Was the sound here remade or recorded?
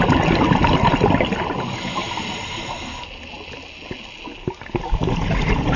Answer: recorded